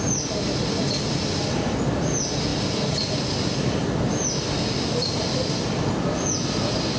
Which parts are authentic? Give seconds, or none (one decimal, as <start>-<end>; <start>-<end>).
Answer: 0.0-7.0